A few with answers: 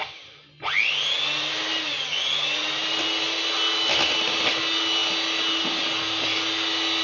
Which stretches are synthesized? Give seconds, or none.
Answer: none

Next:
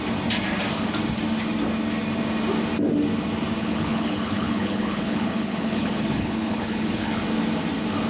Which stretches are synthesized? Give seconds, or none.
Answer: 3.6-7.2 (codec, HILCodec)

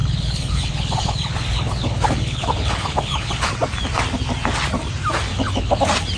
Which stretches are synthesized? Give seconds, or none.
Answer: 0.0-3.5 (codec, HILCodec); 5.3-5.8

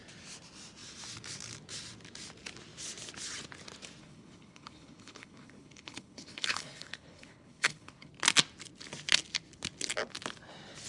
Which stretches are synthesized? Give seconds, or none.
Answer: 4.0-8.1 (codec, HILCodec)

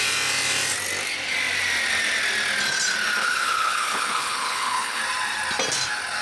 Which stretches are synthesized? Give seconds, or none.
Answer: 3.2-5.0 (codec, HILCodec)

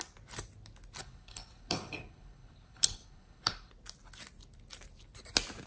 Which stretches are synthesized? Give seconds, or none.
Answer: 1.0-3.7 (codec, HILCodec)

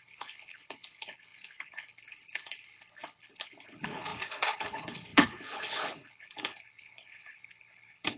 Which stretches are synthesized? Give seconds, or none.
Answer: 0.0-8.2 (codec, HILCodec)